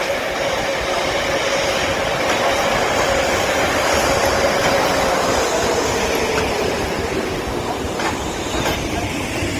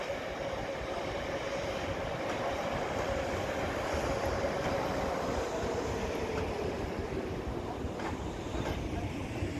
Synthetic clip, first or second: second